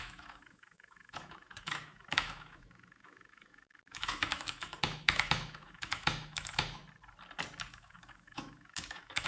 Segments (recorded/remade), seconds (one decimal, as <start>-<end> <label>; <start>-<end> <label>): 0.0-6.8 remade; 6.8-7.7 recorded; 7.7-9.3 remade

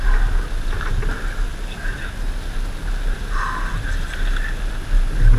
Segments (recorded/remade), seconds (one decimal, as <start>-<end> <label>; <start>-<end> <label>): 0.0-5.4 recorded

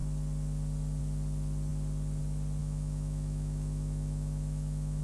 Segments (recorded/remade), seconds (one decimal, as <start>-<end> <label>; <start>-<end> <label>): 0.0-2.6 recorded; 2.6-5.0 remade

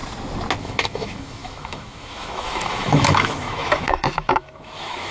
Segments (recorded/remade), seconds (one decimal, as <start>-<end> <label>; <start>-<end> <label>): 0.0-0.6 recorded; 0.6-5.1 remade

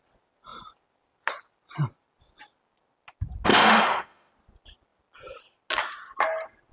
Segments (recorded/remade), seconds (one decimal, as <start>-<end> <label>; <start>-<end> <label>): 0.0-3.5 recorded; 3.5-4.3 remade; 4.3-6.7 recorded